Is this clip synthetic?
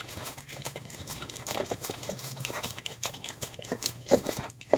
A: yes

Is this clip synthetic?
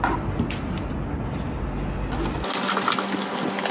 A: no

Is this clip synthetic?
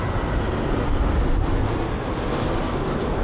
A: no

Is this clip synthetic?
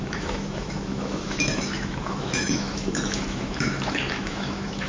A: yes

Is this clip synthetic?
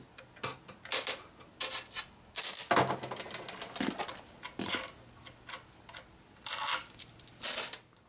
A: no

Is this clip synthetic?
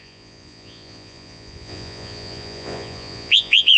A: yes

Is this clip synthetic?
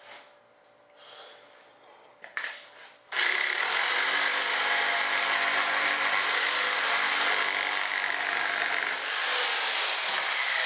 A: no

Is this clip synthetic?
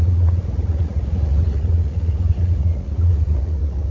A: yes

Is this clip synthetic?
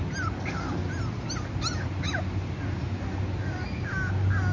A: no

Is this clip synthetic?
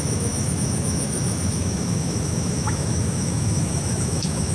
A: yes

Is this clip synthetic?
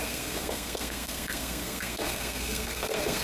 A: yes